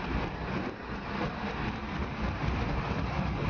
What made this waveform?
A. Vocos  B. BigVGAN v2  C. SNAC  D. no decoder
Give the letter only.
B